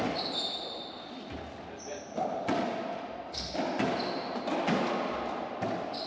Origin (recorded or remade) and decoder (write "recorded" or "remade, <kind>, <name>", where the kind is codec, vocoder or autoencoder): recorded